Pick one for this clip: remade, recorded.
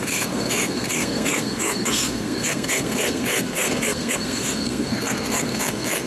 remade